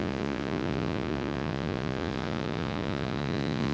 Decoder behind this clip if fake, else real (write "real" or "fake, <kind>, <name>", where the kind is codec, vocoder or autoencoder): fake, vocoder, Vocos